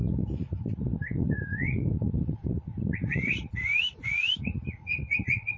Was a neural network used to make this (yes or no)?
yes